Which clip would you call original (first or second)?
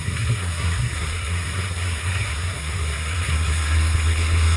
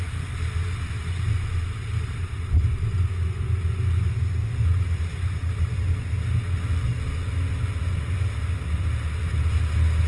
second